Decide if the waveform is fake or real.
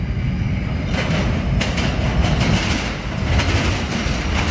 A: real